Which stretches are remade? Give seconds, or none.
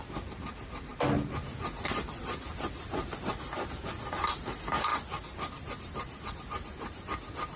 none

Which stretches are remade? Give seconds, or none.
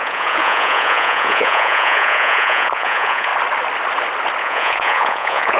0.0-3.3 (vocoder, Vocos); 4.4-5.6